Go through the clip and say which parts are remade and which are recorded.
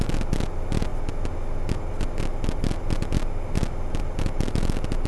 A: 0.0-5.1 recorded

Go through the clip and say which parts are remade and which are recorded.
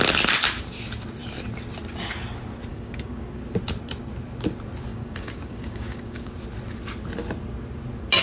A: 0.0-2.7 recorded; 2.7-3.4 remade; 3.4-4.9 recorded; 4.9-6.3 remade; 6.3-8.2 recorded